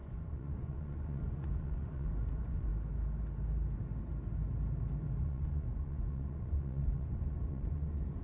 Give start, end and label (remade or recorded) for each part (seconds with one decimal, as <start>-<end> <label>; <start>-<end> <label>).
0.0-2.7 remade; 2.7-5.2 recorded; 5.2-8.2 remade